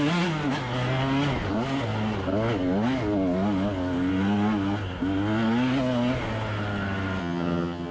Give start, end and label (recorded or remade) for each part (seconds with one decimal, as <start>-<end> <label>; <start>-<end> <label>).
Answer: 0.0-7.2 recorded; 7.2-7.9 remade